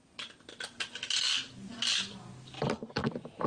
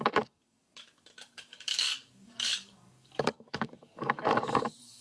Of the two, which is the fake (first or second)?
second